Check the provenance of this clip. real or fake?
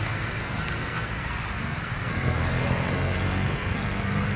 fake